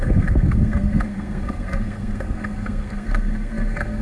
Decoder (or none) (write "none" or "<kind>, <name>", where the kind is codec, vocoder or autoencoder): codec, SNAC